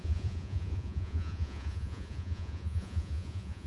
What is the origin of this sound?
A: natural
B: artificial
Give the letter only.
B